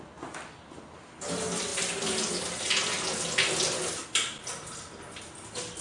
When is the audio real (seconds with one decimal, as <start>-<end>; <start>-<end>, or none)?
0.0-5.8